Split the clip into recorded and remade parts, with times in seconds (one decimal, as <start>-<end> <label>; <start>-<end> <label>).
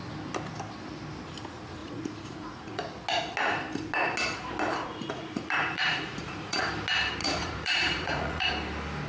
0.0-1.8 recorded; 1.8-2.8 remade; 2.8-4.8 recorded; 4.8-6.6 remade; 6.6-7.2 recorded; 7.2-8.5 remade; 8.5-9.1 recorded